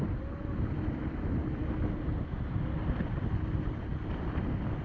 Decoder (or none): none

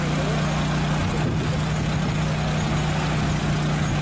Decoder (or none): none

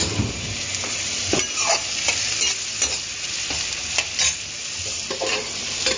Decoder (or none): none